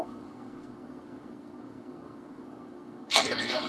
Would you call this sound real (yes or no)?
no